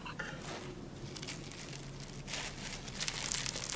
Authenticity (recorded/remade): recorded